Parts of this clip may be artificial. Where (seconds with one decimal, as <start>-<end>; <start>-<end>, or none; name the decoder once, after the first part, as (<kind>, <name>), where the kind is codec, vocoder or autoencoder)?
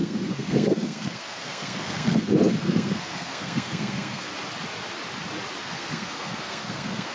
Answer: 0.0-4.3 (codec, SNAC); 5.6-7.1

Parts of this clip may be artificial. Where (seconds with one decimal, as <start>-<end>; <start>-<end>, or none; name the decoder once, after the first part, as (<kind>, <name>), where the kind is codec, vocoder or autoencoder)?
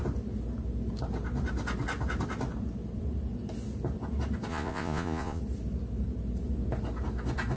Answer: 4.5-5.4 (vocoder, Vocos)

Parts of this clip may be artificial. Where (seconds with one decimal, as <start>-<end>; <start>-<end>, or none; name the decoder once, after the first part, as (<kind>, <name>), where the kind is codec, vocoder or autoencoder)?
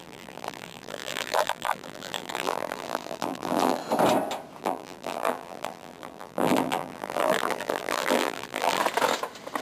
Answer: 0.0-3.8 (vocoder, BigVGAN v2); 4.6-8.8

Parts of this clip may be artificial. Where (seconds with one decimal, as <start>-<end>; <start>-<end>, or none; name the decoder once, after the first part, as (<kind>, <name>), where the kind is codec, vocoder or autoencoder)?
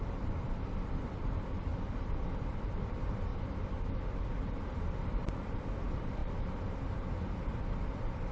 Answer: 0.0-3.3 (vocoder, BigVGAN v2); 4.4-6.2; 7.8-8.3